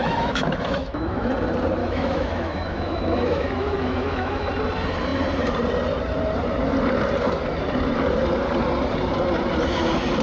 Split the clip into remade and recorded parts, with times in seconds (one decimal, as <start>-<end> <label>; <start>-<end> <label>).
0.0-1.3 remade; 1.3-1.8 recorded; 1.8-4.5 remade; 4.5-10.2 recorded